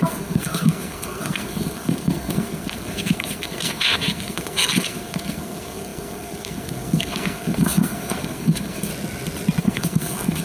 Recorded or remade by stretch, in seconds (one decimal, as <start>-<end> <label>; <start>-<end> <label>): 0.0-8.9 remade; 8.9-9.6 recorded; 9.6-10.4 remade